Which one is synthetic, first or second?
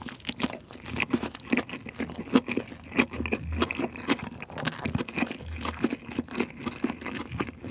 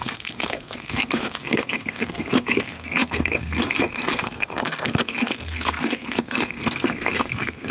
second